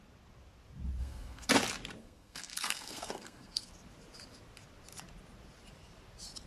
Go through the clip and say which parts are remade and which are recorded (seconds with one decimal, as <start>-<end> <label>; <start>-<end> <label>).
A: 0.0-1.0 recorded; 1.0-1.5 remade; 1.5-2.0 recorded; 2.0-3.7 remade; 3.7-6.5 recorded